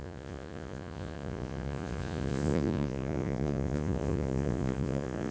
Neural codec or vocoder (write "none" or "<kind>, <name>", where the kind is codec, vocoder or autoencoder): vocoder, Vocos